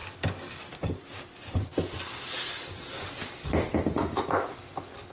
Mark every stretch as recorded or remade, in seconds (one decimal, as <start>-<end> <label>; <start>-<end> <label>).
0.0-0.6 remade; 0.6-5.1 recorded